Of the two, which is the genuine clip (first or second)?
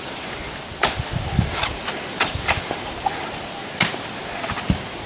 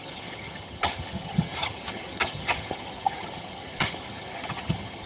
first